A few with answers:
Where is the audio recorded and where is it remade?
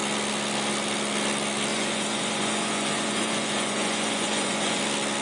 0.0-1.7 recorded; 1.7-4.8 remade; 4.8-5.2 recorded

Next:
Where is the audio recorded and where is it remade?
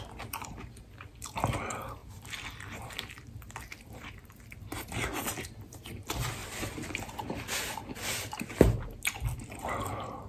0.0-2.0 recorded; 2.0-4.4 remade; 4.4-6.4 recorded; 6.4-7.2 remade; 7.2-10.3 recorded